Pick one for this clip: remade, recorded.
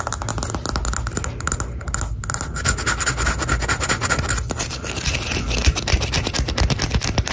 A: recorded